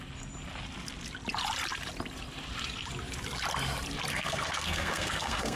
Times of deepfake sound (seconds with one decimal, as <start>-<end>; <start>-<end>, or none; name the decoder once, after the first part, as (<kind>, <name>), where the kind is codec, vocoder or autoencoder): 4.1-5.6 (codec, SNAC)